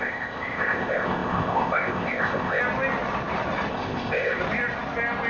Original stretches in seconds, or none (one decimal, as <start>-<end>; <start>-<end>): 2.6-3.7; 4.4-5.3